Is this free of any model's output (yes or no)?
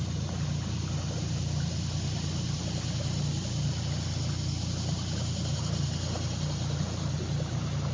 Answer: yes